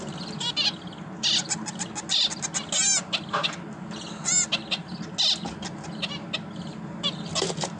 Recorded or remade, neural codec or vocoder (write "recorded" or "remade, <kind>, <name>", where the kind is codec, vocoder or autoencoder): recorded